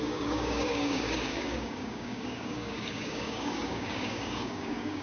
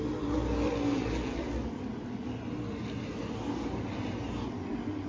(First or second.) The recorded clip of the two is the second